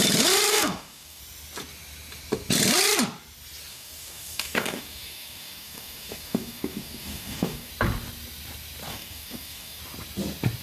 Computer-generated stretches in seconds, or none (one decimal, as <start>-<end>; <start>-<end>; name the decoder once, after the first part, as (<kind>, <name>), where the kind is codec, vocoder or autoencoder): 0.5-1.2 (codec, DAC); 3.7-7.7; 8.9-9.8